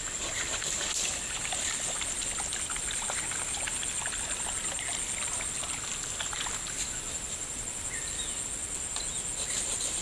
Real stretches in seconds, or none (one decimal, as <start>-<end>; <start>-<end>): 0.0-10.0